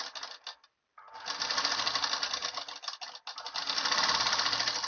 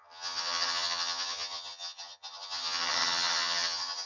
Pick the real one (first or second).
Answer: first